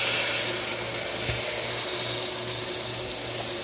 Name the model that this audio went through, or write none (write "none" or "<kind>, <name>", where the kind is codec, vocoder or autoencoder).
none